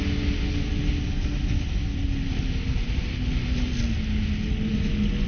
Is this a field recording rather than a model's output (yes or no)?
yes